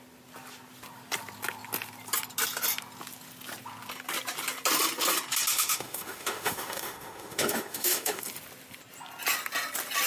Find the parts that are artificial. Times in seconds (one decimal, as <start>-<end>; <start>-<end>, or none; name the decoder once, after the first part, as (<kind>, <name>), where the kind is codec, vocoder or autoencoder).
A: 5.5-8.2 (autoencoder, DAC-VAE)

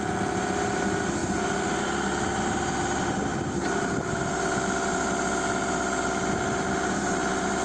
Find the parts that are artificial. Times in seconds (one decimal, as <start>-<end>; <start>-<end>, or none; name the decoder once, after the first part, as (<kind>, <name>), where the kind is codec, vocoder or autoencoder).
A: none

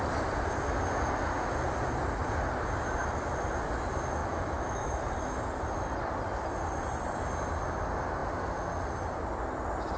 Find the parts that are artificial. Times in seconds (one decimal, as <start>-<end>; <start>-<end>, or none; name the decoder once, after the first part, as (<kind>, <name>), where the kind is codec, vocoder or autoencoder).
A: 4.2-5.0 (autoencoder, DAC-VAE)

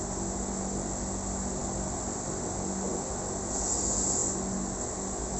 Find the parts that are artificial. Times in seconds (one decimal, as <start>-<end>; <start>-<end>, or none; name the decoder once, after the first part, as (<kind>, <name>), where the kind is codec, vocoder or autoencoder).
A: none

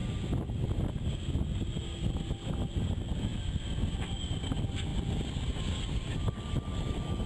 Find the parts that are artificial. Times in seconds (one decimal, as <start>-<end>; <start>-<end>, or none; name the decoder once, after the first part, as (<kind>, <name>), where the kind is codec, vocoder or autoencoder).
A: 4.9-6.5 (vocoder, BigVGAN v2)

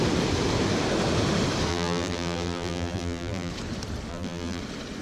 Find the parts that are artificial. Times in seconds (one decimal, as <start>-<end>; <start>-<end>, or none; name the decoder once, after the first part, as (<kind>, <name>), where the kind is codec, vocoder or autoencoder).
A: 1.7-3.5 (vocoder, BigVGAN v2); 4.1-4.6

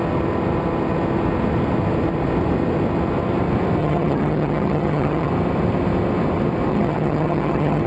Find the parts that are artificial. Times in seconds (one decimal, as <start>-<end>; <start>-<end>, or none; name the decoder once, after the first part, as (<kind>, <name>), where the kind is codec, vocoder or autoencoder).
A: 3.8-5.3 (vocoder, HiFi-GAN); 6.7-7.9